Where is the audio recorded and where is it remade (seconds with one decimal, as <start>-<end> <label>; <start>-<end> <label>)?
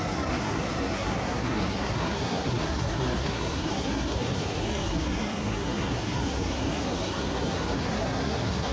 0.0-8.7 remade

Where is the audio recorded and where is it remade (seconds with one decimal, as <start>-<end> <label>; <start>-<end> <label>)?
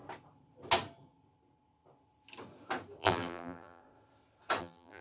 0.0-3.0 recorded; 3.0-3.8 remade; 3.8-4.6 recorded; 4.6-5.0 remade